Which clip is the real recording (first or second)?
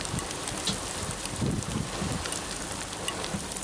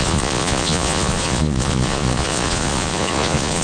first